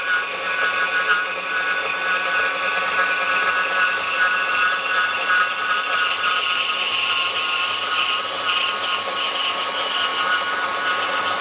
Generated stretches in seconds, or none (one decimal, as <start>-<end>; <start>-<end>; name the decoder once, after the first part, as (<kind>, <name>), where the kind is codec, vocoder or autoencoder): none